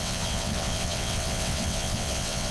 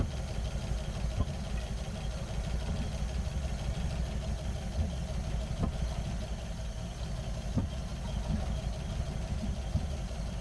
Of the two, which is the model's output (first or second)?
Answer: first